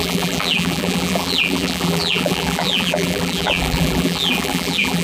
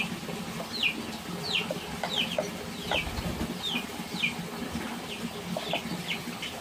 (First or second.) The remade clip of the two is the first